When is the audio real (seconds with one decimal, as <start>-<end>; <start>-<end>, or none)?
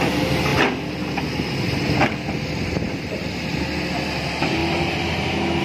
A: 0.5-3.9; 4.6-5.6